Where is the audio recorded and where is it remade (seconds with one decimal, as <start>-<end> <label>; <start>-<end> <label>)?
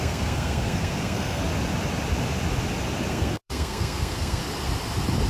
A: 0.0-1.4 remade; 1.4-3.1 recorded; 3.1-4.4 remade; 4.4-5.3 recorded